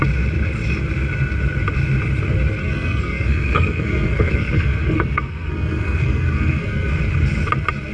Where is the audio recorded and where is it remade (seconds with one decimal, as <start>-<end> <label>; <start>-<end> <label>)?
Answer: 0.0-2.6 recorded; 2.6-7.0 remade; 7.0-7.9 recorded